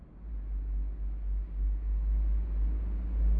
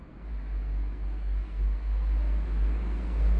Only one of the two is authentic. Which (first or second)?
first